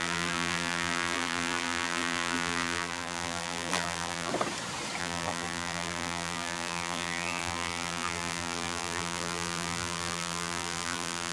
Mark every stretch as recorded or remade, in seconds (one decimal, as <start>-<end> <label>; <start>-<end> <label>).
0.0-4.3 remade; 4.3-5.0 recorded; 5.0-11.3 remade